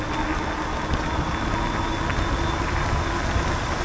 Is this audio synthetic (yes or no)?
no